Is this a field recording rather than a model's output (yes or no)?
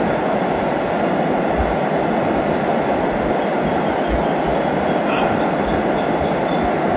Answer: yes